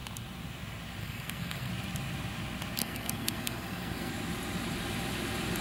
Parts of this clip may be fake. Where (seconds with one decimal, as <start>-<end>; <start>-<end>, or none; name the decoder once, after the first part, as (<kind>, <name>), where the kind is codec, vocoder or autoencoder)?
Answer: 1.0-1.7 (codec, SNAC); 2.8-4.1